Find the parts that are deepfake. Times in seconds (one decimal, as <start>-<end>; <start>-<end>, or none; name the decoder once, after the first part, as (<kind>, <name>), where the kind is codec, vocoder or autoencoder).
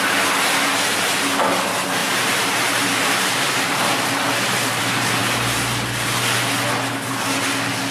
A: 2.0-4.8 (vocoder, BigVGAN v2)